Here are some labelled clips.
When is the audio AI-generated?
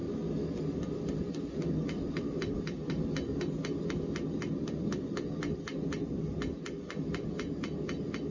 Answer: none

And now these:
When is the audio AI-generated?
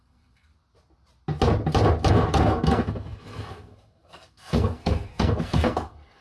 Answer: 0.0-0.5 (codec, SNAC); 2.1-6.2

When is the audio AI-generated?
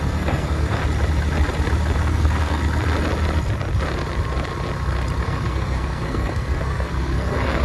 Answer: 0.0-0.8 (codec, SNAC); 2.0-2.6; 5.2-7.6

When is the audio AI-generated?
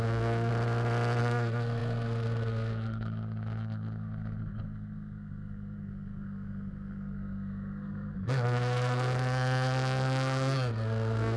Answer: 0.0-0.5 (codec, SNAC); 1.2-11.4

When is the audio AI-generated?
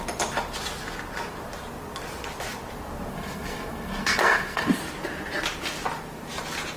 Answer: 3.1-4.8 (codec, SNAC)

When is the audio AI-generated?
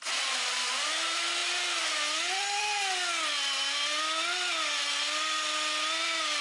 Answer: none